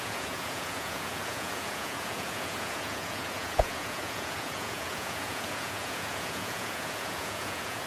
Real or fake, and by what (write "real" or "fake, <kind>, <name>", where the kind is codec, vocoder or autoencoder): fake, vocoder, Vocos